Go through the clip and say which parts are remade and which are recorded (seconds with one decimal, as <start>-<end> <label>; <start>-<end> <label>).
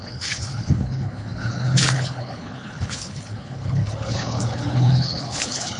0.0-5.8 remade